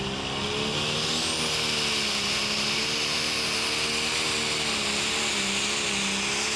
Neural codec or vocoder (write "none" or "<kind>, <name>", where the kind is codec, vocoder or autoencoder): none